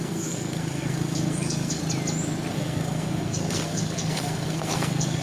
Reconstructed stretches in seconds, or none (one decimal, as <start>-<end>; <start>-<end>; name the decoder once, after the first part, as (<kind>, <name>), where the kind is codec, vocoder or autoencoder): 0.0-1.8 (codec, SNAC); 2.5-5.2